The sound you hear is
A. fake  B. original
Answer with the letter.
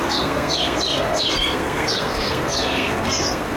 A